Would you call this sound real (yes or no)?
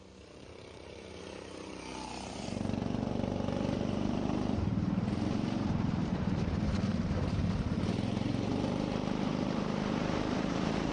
no